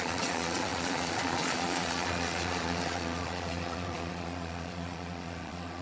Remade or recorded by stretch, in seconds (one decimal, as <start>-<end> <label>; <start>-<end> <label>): 0.0-5.8 remade